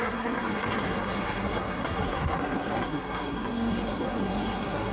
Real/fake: fake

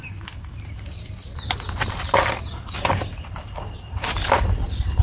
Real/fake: real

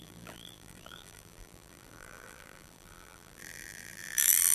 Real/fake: fake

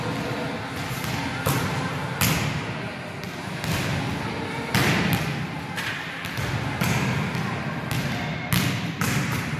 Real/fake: real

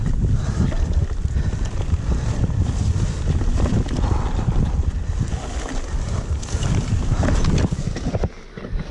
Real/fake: real